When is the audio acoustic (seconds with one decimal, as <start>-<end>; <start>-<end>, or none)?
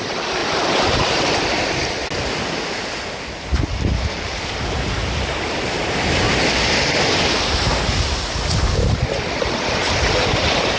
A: 0.0-0.4; 1.6-5.0; 6.3-10.8